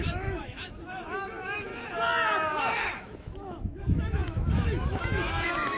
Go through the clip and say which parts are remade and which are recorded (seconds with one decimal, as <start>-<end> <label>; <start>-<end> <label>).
0.0-1.7 remade; 1.7-2.6 recorded; 2.6-5.8 remade